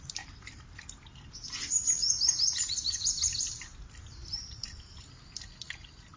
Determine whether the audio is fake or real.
real